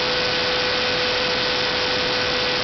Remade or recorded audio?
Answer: recorded